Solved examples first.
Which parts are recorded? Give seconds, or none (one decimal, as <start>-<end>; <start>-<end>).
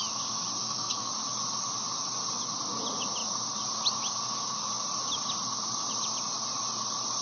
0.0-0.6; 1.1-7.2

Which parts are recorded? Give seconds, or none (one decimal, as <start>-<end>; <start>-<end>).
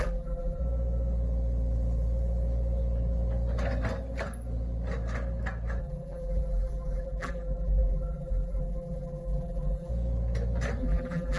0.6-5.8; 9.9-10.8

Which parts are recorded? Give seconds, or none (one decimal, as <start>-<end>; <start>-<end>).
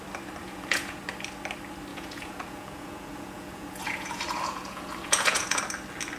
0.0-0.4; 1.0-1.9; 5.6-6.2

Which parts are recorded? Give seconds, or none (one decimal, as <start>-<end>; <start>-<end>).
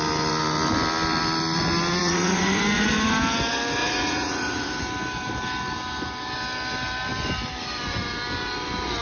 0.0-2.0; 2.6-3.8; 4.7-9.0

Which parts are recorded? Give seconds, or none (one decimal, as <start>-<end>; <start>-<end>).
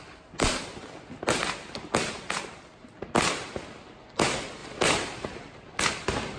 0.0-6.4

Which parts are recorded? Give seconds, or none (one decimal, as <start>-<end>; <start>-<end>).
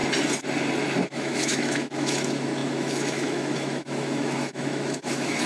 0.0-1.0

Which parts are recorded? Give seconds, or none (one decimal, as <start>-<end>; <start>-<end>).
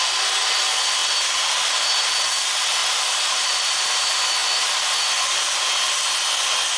0.0-2.8; 3.8-6.8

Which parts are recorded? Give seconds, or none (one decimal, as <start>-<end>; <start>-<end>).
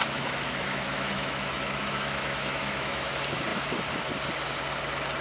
3.1-5.2